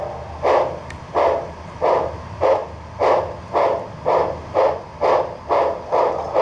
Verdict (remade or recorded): recorded